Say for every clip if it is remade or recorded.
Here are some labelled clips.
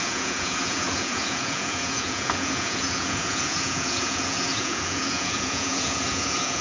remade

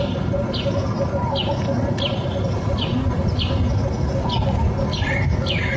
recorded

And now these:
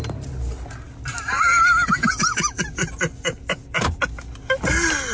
recorded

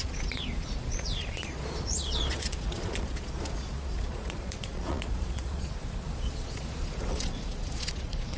remade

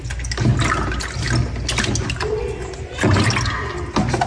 recorded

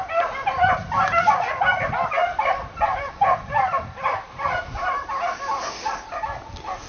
recorded